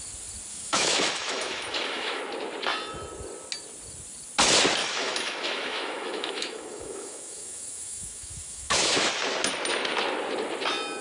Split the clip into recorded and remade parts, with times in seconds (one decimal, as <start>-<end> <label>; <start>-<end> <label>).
0.0-0.5 recorded; 0.5-2.2 remade; 2.2-4.8 recorded; 4.8-9.1 remade; 9.1-11.0 recorded